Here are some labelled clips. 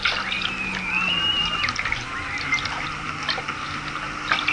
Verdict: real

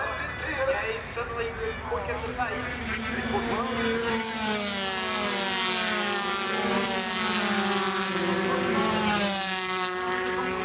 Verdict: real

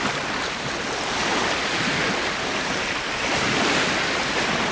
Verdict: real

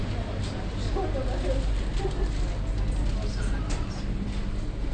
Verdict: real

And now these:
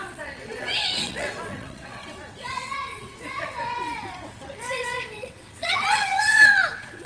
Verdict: fake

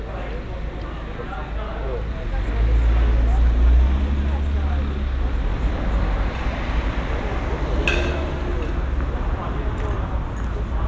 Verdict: real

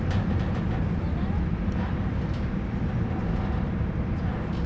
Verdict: real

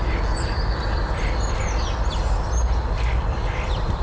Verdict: real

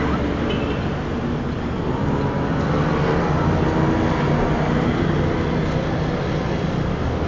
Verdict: real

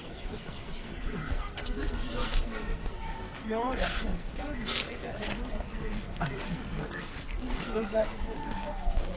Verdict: fake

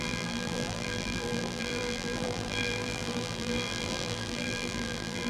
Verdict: fake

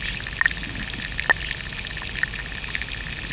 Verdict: real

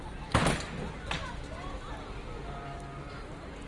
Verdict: real